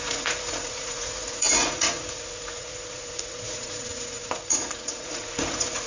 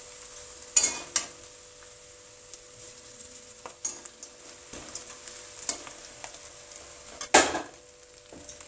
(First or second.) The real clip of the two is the second